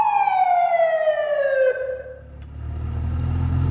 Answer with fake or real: real